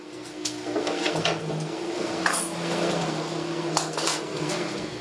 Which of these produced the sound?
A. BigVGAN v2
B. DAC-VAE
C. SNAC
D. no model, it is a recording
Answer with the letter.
C